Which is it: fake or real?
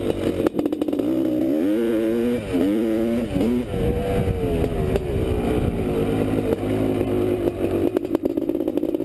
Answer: real